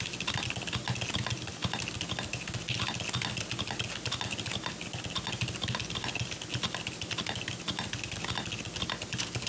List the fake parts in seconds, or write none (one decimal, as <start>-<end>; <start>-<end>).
none